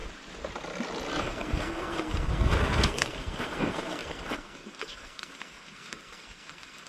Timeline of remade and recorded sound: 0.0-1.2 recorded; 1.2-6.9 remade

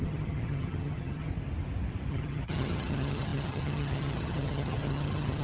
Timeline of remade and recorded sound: 0.0-1.3 remade; 1.3-2.1 recorded; 2.1-5.4 remade

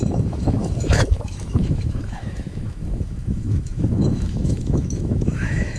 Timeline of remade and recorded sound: 0.0-5.8 remade

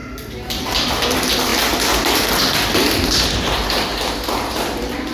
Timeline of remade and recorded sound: 0.0-0.6 recorded; 0.6-1.5 remade; 1.5-2.1 recorded; 2.1-3.9 remade; 3.9-4.5 recorded; 4.5-5.1 remade

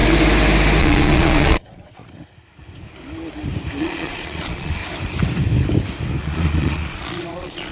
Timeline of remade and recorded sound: 0.0-0.8 recorded; 0.8-2.0 remade; 2.0-3.8 recorded; 3.8-4.8 remade; 4.8-6.2 recorded; 6.2-7.7 remade

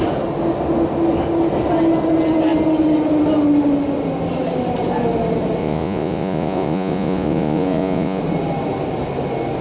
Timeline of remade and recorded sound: 0.0-5.6 recorded; 5.6-8.2 remade; 8.2-9.6 recorded

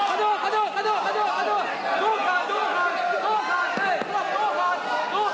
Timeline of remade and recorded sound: 0.0-5.3 recorded

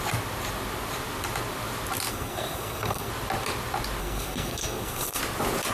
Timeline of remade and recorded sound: 0.0-2.1 recorded; 2.1-3.1 remade; 3.1-4.0 recorded; 4.0-5.2 remade; 5.2-5.7 recorded